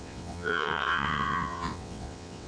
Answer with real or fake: fake